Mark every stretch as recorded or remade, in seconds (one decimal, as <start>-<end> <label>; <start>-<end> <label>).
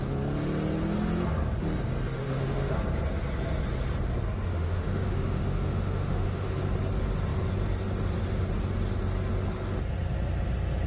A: 0.0-2.2 recorded; 2.2-2.8 remade; 2.8-4.5 recorded; 4.5-6.5 remade; 6.5-10.9 recorded